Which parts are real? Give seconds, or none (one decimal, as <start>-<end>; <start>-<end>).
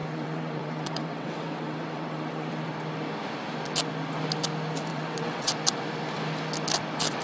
2.7-4.9; 5.5-7.2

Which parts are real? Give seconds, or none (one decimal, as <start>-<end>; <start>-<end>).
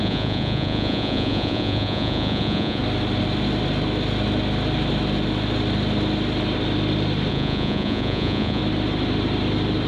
2.8-7.3; 8.6-9.9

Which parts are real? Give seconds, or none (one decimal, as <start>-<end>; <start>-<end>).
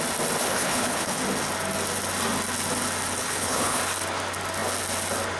0.0-0.4; 1.2-3.2; 3.8-5.4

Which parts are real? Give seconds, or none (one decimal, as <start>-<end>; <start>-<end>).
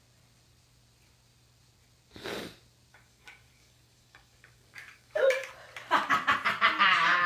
0.0-2.9; 5.5-7.3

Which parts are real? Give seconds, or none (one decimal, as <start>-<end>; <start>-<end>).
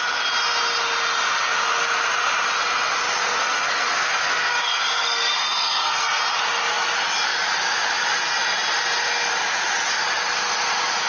0.0-3.2; 6.2-11.1